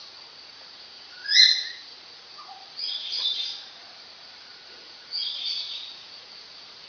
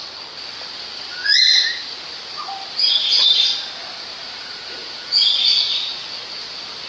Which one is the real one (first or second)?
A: second